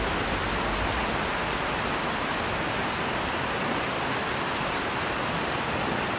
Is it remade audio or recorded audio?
recorded